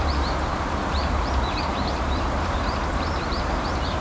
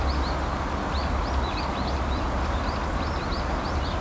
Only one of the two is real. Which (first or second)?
second